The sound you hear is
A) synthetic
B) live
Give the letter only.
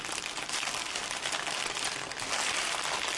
B